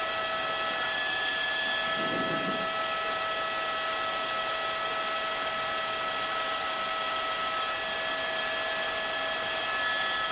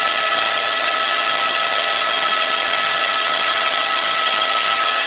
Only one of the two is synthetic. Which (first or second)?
second